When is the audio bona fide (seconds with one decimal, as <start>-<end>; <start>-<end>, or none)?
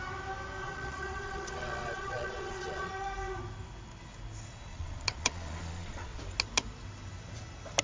0.0-0.6; 2.9-4.7; 6.2-7.8